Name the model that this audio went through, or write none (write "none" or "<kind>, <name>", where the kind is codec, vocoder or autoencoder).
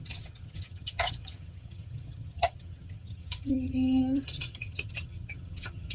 vocoder, HiFi-GAN